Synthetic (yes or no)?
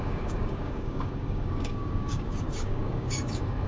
yes